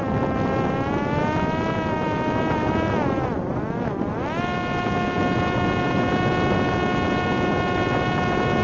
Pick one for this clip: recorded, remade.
recorded